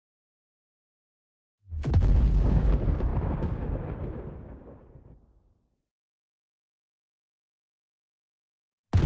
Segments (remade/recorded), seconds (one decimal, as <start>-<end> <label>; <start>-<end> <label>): 0.0-6.6 remade; 6.6-9.1 recorded